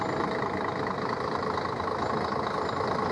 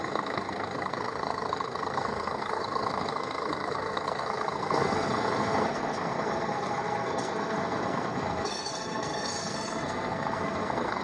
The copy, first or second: second